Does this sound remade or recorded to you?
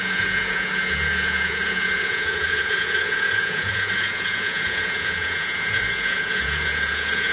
remade